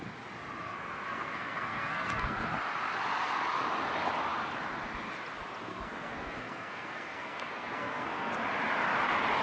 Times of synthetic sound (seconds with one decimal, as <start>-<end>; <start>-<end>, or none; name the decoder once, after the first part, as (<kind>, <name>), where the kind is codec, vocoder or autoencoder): 0.6-2.5 (codec, SNAC); 5.7-8.3